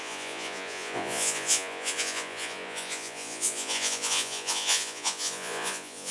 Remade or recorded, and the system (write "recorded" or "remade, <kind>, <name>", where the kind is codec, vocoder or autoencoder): remade, vocoder, Vocos